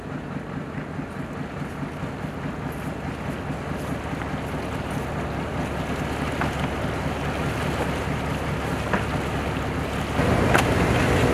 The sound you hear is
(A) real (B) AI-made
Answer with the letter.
A